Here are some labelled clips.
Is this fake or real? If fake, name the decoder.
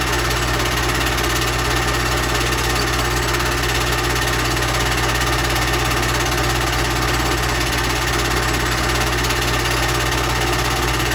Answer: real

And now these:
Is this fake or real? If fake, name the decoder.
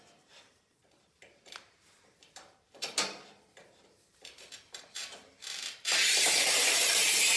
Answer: fake, vocoder, BigVGAN v2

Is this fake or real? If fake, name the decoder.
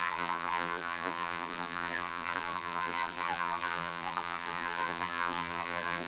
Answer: fake, vocoder, BigVGAN v2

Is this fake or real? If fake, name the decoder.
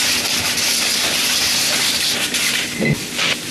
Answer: real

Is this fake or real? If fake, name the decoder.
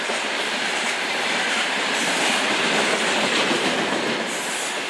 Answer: fake, vocoder, BigVGAN v2